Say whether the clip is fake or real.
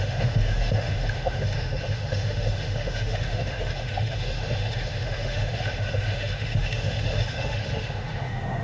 fake